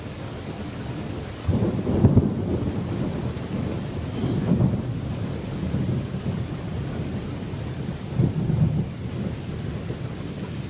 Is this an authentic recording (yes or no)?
yes